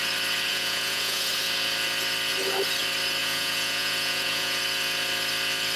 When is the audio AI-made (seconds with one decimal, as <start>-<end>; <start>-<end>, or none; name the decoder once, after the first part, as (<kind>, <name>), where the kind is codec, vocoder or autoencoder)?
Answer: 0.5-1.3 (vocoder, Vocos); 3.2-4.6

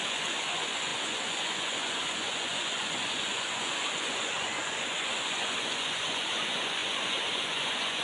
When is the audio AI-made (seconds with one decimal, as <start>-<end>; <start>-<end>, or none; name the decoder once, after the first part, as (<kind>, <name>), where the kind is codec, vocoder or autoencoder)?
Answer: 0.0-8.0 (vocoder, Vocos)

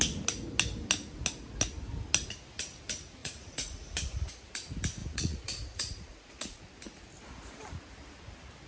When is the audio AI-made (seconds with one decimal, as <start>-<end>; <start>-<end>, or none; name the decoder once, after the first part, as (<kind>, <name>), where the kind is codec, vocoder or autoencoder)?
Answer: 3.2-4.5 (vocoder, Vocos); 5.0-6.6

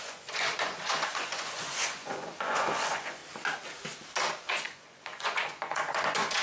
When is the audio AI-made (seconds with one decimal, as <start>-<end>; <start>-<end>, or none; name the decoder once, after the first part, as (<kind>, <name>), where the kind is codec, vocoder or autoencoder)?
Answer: 0.0-3.2 (vocoder, Vocos); 4.3-6.4

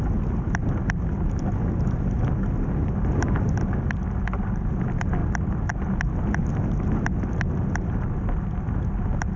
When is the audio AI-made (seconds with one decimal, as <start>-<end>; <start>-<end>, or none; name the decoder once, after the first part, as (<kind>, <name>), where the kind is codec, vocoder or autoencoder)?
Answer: none